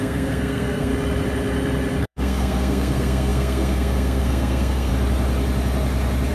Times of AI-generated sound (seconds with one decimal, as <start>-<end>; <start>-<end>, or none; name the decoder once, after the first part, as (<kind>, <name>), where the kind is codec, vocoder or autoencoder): 0.0-0.9 (codec, SNAC); 2.0-4.9